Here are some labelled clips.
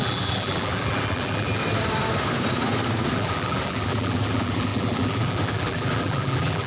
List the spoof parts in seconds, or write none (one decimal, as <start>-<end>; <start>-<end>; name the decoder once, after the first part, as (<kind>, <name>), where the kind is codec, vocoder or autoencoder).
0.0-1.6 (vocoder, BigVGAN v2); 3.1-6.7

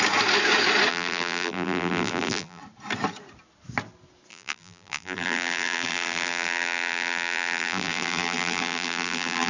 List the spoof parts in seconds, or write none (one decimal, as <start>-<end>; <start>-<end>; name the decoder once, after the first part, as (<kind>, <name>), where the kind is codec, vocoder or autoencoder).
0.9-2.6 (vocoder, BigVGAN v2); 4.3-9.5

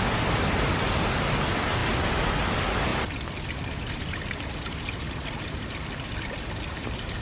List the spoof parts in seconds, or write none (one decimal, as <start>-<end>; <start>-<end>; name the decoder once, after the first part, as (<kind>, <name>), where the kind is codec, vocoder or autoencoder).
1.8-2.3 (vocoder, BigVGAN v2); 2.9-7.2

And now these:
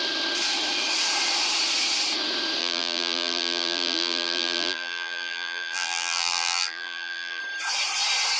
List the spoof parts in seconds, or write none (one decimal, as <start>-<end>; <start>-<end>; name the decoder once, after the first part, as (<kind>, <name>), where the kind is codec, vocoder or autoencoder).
2.6-7.4 (vocoder, BigVGAN v2)

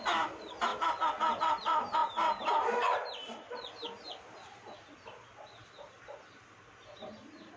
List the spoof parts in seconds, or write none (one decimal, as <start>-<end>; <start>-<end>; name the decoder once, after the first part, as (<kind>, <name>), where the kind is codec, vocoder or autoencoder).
2.0-4.2 (vocoder, BigVGAN v2)

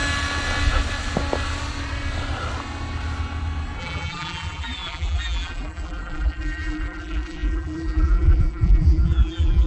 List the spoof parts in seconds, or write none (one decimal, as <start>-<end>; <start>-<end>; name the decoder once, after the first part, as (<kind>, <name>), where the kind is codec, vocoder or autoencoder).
3.8-9.7 (vocoder, BigVGAN v2)

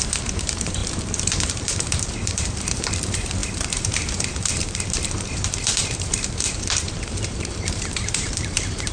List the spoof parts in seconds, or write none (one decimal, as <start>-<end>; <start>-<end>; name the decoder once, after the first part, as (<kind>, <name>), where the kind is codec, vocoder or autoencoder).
0.0-0.8 (vocoder, BigVGAN v2); 1.3-8.9

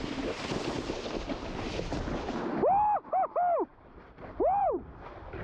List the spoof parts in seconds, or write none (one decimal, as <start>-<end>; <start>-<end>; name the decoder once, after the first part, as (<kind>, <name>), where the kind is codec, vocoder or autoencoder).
3.7-4.7 (vocoder, BigVGAN v2)